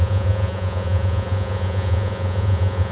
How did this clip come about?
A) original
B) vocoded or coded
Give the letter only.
B